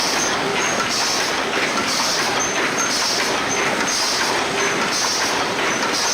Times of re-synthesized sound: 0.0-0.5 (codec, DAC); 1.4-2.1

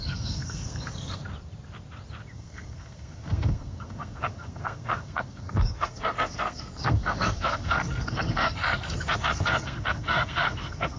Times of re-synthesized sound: 0.0-1.2 (codec, SNAC); 2.3-11.0

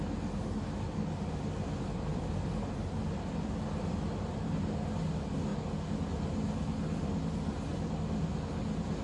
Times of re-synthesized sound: 2.1-3.0 (vocoder, BigVGAN v2)

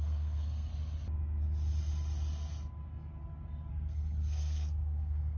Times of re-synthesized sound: 0.0-0.7 (codec, SNAC); 3.7-5.4

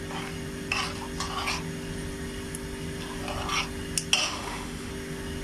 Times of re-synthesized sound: 4.2-4.9 (autoencoder, DAC-VAE)

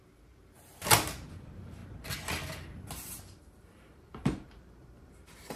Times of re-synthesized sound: 0.0-0.7 (vocoder, BigVGAN v2); 1.3-1.8; 3.2-5.6